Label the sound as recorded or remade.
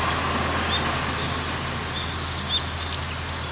recorded